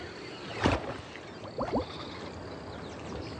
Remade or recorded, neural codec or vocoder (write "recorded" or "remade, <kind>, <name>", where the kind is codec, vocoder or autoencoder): recorded